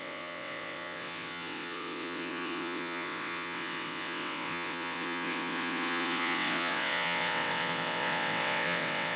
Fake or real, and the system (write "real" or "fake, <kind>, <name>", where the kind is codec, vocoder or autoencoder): fake, vocoder, WaveNeXt